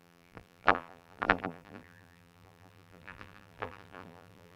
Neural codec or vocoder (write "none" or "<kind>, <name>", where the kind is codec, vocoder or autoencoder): vocoder, BigVGAN v2